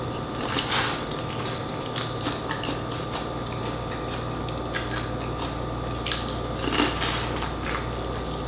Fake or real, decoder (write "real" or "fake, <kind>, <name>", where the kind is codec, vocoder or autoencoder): real